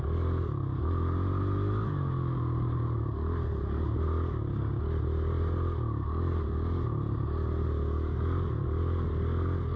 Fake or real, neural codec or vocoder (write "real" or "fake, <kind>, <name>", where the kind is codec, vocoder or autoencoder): real